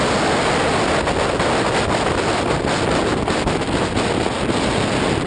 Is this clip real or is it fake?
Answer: real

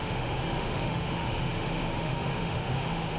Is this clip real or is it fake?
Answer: fake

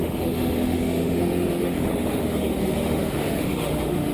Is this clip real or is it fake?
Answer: fake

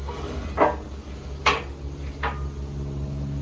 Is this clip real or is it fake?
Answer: real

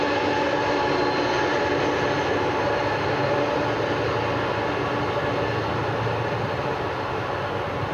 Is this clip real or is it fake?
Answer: real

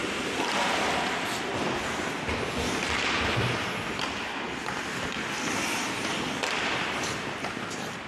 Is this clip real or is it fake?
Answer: real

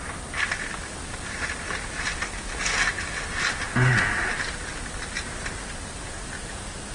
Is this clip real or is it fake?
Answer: real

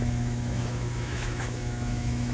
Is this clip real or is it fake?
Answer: fake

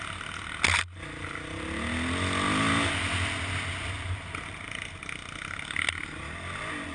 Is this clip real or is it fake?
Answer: real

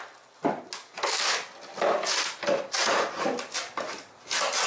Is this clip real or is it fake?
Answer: real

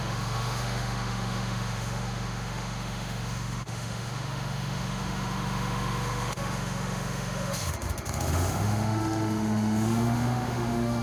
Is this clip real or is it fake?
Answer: fake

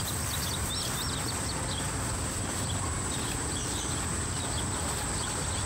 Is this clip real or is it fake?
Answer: real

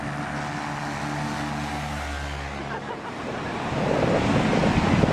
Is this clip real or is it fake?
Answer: real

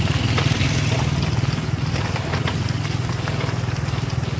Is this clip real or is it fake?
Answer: real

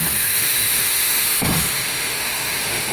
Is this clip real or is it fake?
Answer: fake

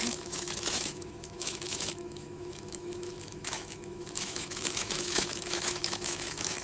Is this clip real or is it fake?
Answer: fake